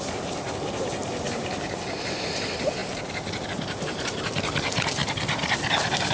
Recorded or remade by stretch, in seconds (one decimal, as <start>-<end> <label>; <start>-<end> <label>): 0.0-1.0 recorded; 1.0-1.8 remade; 1.8-5.0 recorded; 5.0-6.1 remade